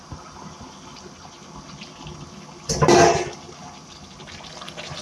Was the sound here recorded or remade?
recorded